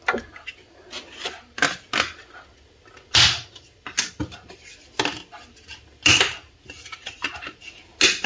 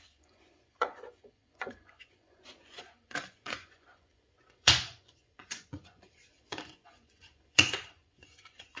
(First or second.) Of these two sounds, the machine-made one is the second